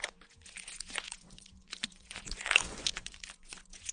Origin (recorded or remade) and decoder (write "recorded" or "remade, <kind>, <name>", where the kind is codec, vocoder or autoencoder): remade, vocoder, Vocos